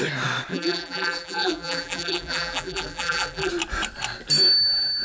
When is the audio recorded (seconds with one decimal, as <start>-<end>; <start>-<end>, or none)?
0.0-0.5; 3.5-5.0